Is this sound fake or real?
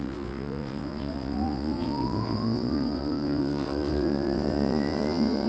fake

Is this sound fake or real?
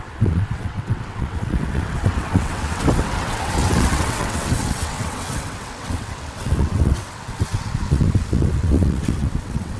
fake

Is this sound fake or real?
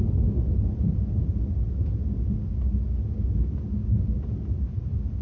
real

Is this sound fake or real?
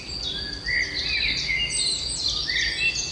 real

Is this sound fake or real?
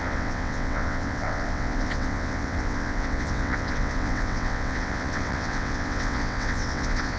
fake